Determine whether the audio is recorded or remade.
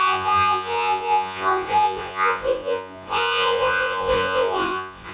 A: remade